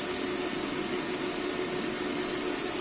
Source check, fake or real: real